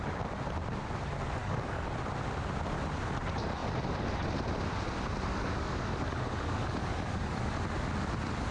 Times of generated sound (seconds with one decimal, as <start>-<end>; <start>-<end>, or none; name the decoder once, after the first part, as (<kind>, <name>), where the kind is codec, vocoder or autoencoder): 1.4-1.9 (codec, DAC); 5.3-7.5